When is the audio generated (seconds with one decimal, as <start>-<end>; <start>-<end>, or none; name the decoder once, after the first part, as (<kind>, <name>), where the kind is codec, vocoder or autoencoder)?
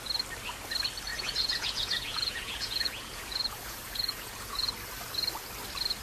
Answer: 1.1-4.7 (vocoder, Vocos)